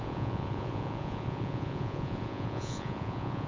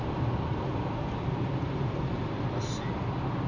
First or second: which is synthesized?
first